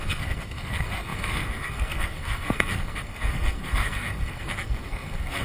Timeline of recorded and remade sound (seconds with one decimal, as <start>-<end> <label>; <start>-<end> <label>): 0.0-5.4 remade